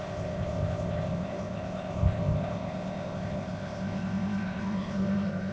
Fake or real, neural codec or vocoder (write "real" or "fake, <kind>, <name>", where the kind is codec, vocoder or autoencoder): fake, codec, ZipCodec